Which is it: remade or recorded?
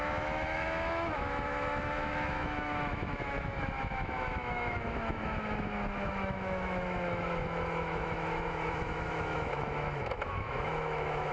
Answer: remade